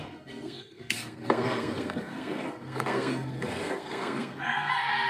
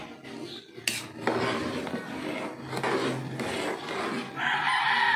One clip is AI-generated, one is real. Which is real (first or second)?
second